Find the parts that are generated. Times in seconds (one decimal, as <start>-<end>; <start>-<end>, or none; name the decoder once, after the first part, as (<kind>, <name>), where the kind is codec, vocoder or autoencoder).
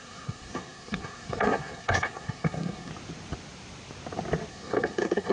0.0-2.9 (codec, SNAC); 4.5-5.3